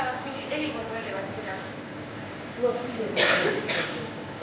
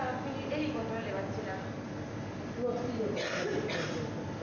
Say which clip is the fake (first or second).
first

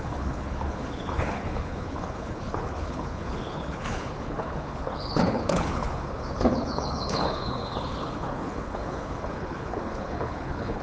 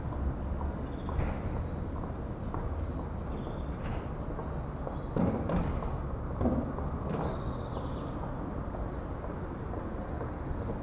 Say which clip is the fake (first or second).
first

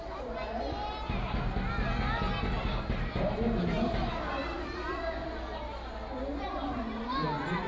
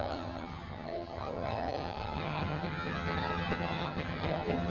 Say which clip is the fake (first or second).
second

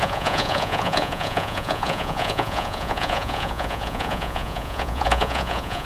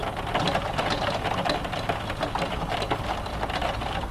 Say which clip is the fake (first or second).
first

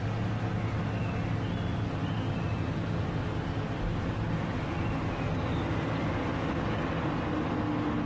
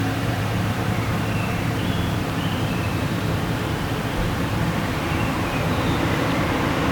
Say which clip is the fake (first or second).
second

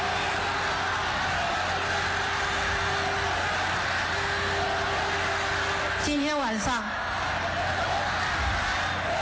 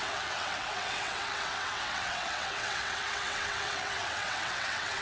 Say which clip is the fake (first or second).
second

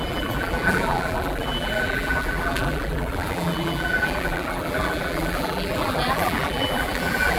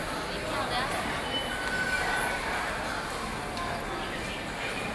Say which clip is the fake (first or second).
first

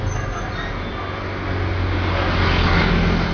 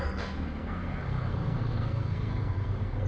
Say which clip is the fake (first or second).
second